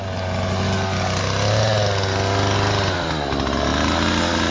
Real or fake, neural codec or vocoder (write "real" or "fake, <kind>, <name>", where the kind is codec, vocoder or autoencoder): real